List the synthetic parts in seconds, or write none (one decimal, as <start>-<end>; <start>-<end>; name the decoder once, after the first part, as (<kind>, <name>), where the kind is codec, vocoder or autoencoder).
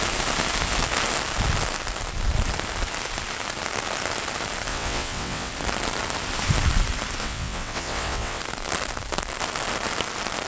4.7-5.5 (vocoder, WaveNeXt); 7.2-8.4